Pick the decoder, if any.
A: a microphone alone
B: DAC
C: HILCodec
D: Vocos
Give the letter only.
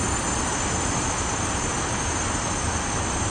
A